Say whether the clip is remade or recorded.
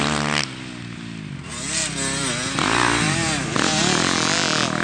recorded